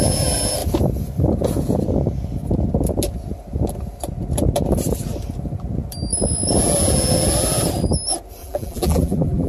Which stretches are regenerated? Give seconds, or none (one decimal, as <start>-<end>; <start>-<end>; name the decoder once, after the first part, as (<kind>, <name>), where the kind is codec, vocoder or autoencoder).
8.4-9.5 (vocoder, BigVGAN v2)